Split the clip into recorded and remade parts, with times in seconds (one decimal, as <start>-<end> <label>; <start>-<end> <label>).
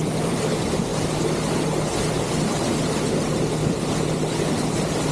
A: 0.0-5.1 recorded